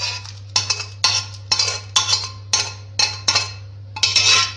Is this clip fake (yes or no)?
no